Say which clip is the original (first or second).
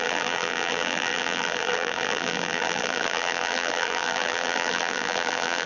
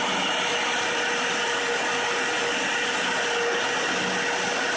second